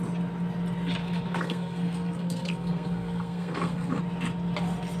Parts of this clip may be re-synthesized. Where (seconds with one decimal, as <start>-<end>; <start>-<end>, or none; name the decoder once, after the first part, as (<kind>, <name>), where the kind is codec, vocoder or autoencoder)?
1.0-4.0 (codec, SNAC)